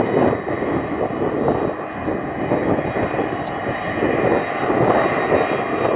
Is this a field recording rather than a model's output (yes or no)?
yes